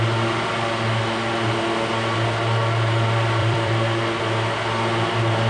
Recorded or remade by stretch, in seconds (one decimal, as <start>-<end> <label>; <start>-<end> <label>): 0.0-3.4 recorded; 3.4-4.2 remade; 4.2-5.5 recorded